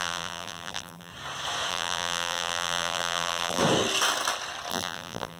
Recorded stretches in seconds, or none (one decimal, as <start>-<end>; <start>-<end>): 1.1-1.7; 3.6-4.7

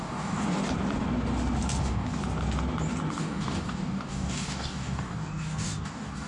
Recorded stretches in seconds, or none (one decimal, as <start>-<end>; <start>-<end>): 0.6-1.8; 2.2-3.2

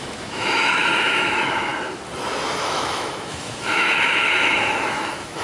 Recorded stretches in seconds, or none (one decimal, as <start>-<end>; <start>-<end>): 1.7-2.6